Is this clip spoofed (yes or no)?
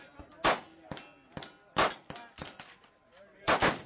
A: no